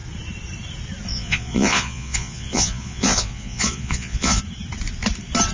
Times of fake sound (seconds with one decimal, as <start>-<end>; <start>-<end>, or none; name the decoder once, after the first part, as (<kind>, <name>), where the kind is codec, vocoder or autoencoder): 1.1-4.4 (vocoder, Vocos)